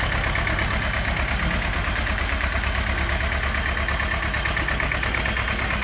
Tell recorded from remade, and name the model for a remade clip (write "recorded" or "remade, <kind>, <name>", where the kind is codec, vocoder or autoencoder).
recorded